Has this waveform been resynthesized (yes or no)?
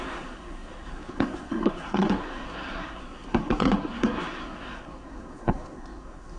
yes